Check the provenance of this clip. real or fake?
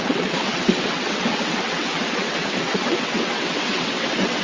fake